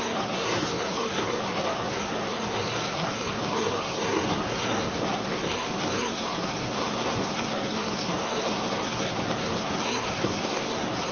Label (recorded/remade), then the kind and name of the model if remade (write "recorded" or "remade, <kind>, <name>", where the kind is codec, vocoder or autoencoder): remade, codec, SNAC